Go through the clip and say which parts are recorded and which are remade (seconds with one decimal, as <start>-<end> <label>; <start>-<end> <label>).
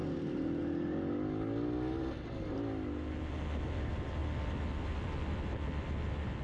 0.0-3.8 recorded; 3.8-4.2 remade; 4.2-4.9 recorded; 4.9-6.4 remade